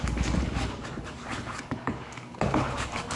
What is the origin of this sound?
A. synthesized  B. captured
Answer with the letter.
A